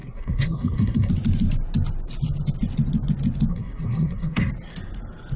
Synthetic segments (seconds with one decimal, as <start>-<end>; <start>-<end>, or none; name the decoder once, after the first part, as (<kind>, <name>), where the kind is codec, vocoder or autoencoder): 0.0-1.1 (codec, SNAC); 3.5-4.5